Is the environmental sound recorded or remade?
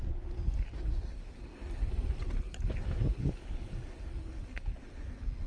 recorded